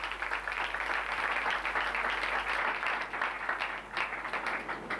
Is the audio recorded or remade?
recorded